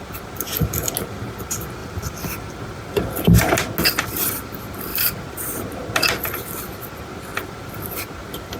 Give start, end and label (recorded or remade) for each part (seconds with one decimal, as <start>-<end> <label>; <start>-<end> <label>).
0.0-1.8 recorded; 1.8-3.4 remade; 3.4-7.3 recorded; 7.3-8.0 remade; 8.0-8.6 recorded